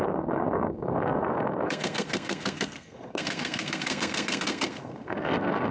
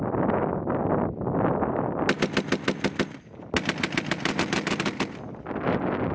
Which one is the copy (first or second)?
first